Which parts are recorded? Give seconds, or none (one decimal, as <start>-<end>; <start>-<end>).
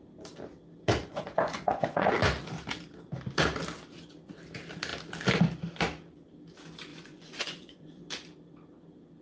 0.0-1.0; 2.1-6.9; 8.0-9.2